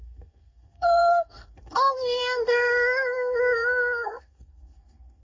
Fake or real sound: fake